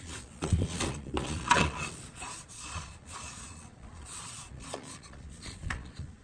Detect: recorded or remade remade